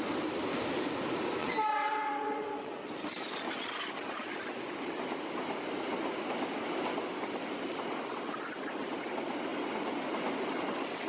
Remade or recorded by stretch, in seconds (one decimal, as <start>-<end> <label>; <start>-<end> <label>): 0.0-1.4 recorded; 1.4-2.8 remade; 2.8-11.1 recorded